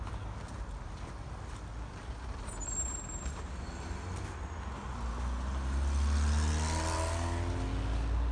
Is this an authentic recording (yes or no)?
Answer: yes